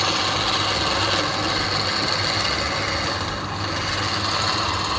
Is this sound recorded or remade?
recorded